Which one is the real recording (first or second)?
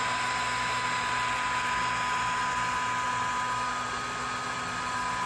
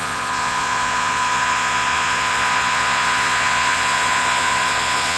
first